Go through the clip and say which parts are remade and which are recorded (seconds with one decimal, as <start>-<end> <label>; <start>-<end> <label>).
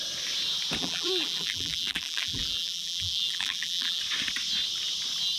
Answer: 0.0-0.8 recorded; 0.8-4.0 remade; 4.0-5.4 recorded